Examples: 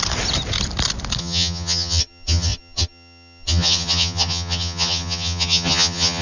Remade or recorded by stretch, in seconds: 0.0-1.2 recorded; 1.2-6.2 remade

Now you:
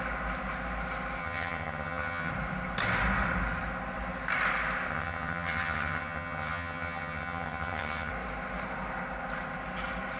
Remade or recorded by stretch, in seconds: 0.0-1.2 recorded; 1.2-2.3 remade; 2.3-4.9 recorded; 4.9-8.1 remade; 8.1-10.2 recorded